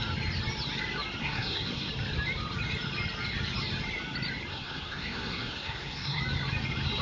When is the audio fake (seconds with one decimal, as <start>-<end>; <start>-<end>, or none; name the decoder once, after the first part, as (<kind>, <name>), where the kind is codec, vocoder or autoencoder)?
1.2-1.9 (codec, SNAC); 4.5-6.2